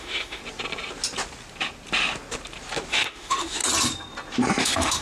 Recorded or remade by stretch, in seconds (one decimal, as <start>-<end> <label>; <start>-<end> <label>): 0.0-0.4 remade; 0.4-2.9 recorded; 2.9-3.6 remade; 3.6-4.6 recorded; 4.6-5.0 remade